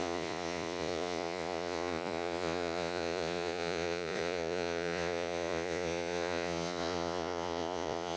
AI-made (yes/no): yes